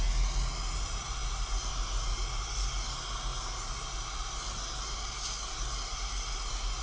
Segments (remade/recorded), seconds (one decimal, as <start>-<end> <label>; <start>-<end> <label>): 0.0-6.8 recorded